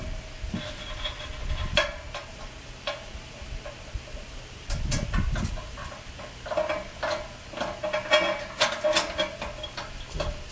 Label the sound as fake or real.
real